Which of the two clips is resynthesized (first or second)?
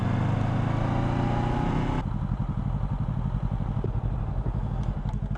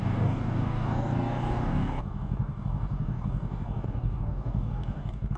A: second